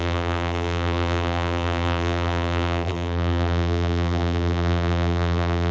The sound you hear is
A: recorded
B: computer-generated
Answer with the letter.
B